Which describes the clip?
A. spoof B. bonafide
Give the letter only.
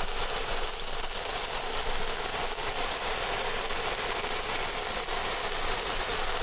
B